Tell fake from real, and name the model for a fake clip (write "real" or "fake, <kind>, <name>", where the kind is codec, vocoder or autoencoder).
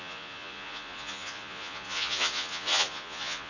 fake, vocoder, Vocos